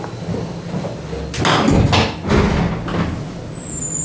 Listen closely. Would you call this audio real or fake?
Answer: real